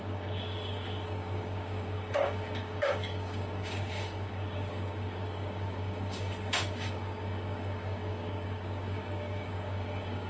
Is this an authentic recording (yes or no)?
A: no